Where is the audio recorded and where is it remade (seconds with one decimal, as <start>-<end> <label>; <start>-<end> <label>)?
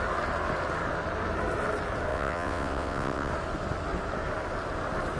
0.0-2.1 recorded; 2.1-3.3 remade; 3.3-5.2 recorded